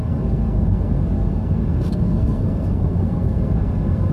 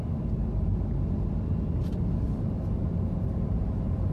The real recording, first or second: second